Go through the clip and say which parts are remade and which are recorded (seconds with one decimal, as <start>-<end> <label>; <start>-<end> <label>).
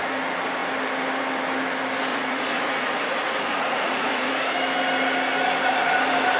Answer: 0.0-2.1 recorded; 2.1-4.3 remade; 4.3-6.4 recorded